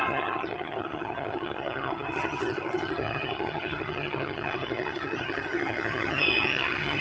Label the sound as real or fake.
fake